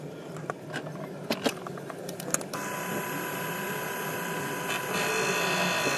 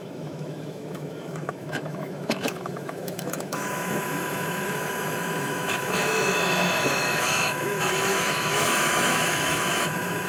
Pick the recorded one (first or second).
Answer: first